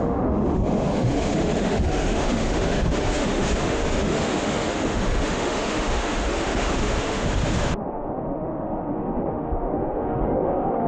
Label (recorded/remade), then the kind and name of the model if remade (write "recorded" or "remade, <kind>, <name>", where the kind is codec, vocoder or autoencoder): remade, autoencoder, DAC-VAE